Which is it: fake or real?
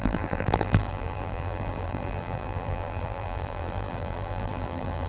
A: fake